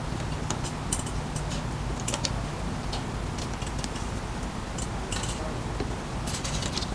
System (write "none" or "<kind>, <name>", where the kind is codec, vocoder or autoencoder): none